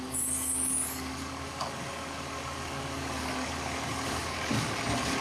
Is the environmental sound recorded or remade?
remade